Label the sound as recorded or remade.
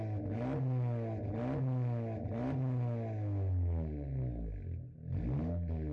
recorded